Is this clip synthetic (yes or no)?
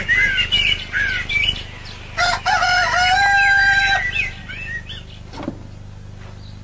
no